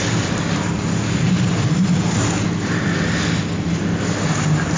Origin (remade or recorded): recorded